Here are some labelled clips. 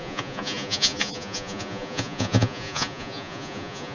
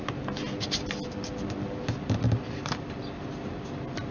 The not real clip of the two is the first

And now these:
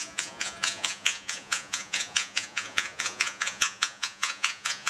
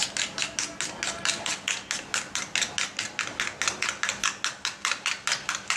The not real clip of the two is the first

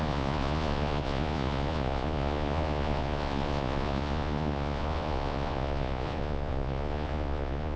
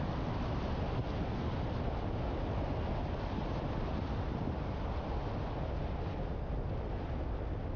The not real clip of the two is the first